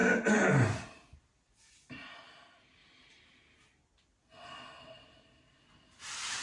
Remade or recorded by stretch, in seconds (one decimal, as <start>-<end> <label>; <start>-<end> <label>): 0.0-6.4 recorded